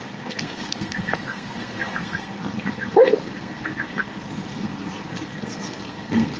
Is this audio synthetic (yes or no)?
yes